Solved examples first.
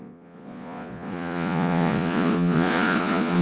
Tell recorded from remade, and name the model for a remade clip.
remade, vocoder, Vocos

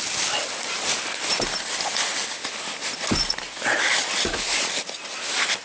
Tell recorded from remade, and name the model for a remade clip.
recorded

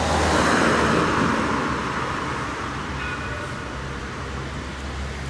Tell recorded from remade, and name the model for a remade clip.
recorded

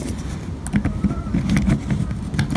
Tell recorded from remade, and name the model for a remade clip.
recorded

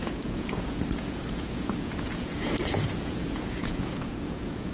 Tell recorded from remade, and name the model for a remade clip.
remade, vocoder, Vocos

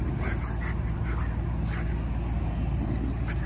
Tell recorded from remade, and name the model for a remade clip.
recorded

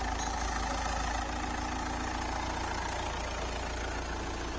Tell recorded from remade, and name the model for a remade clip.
recorded